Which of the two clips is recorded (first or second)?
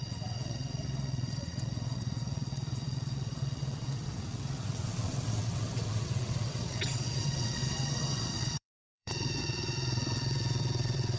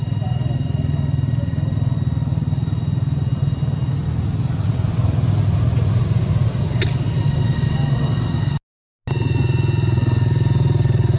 second